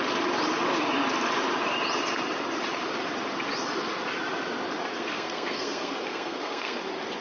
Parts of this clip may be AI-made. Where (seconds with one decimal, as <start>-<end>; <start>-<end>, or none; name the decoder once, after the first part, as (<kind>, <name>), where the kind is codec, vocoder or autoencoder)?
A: 4.9-6.8 (codec, SNAC)